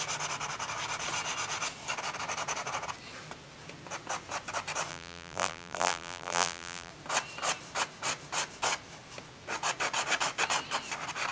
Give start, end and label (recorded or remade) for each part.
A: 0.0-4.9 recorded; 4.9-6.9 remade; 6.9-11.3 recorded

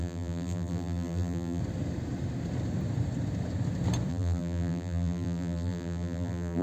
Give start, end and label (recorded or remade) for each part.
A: 0.0-1.6 remade; 1.6-4.1 recorded; 4.1-6.6 remade

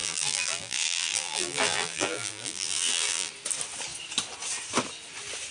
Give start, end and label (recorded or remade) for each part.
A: 0.0-3.3 remade; 3.3-5.5 recorded

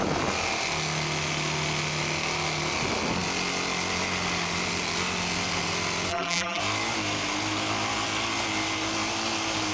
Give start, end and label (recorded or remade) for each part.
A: 0.0-6.1 recorded; 6.1-6.6 remade; 6.6-9.7 recorded

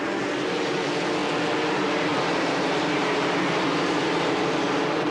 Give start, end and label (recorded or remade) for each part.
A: 0.0-1.2 remade; 1.2-1.7 recorded; 1.7-5.1 remade